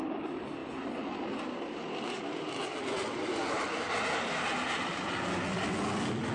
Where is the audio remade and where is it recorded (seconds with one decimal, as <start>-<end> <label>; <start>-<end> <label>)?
0.0-6.3 recorded